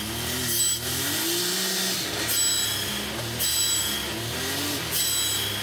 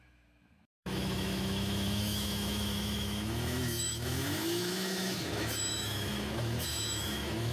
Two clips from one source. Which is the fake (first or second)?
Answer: second